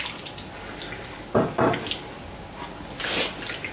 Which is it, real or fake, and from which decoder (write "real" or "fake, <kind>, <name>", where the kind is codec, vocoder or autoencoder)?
real